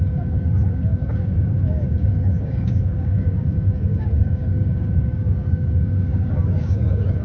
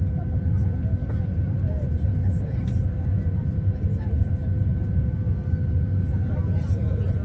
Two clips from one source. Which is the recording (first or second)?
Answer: second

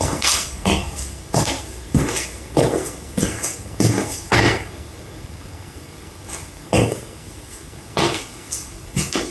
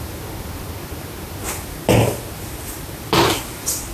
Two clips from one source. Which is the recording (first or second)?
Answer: second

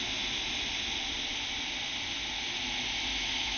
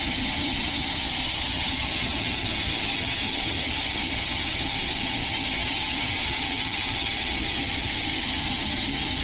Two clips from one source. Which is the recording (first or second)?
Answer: first